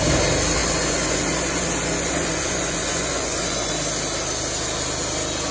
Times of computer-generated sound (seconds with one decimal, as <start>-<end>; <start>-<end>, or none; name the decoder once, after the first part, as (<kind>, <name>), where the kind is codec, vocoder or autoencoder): 0.6-3.7 (vocoder, Vocos)